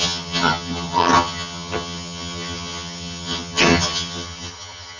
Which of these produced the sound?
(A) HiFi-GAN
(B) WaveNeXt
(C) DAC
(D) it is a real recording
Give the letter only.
A